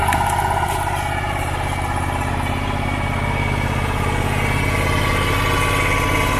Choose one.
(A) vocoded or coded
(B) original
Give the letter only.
B